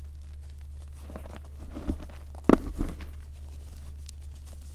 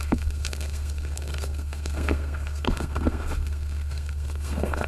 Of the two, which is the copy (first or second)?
second